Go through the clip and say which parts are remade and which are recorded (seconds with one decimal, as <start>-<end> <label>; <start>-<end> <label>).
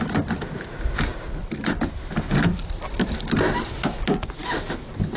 0.0-5.2 recorded